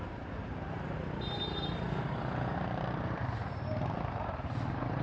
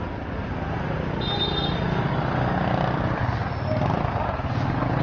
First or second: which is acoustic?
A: second